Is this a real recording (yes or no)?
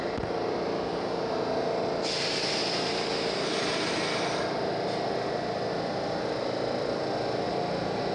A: yes